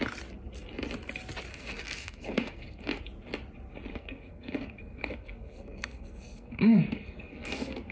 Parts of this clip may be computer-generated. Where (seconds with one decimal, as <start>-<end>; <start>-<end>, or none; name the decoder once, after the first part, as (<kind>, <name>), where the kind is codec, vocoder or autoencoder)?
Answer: 1.5-3.0 (codec, SNAC); 3.9-7.9

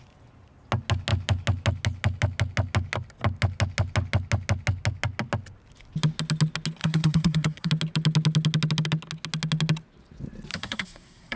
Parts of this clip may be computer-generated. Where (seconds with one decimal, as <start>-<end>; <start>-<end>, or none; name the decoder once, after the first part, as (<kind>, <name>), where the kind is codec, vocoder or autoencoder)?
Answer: 6.8-7.7 (codec, SNAC); 10.5-11.4

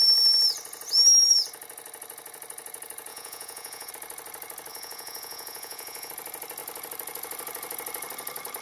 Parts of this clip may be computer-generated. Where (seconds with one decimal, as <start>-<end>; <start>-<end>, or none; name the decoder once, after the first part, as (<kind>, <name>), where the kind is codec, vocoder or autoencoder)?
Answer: 3.1-3.9 (vocoder, Vocos); 4.7-6.1

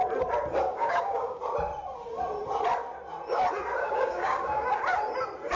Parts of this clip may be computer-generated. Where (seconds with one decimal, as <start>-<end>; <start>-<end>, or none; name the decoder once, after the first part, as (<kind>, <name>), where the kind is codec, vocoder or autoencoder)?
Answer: 0.7-1.4 (codec, DAC); 3.8-4.8

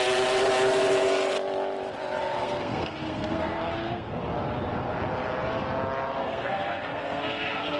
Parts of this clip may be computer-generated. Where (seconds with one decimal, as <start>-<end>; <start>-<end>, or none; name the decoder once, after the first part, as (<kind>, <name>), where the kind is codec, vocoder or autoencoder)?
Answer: 2.2-4.2 (codec, SNAC); 6.2-7.8